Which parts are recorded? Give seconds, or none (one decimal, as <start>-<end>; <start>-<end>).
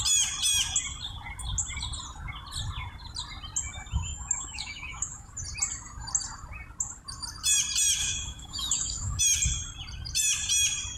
0.0-4.1; 5.3-8.0; 9.2-11.0